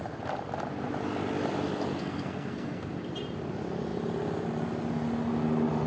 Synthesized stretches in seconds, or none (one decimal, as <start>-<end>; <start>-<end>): 2.0-2.9